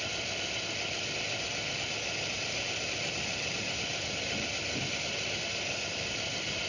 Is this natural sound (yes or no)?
yes